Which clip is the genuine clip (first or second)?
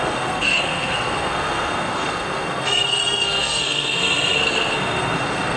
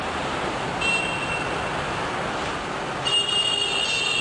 second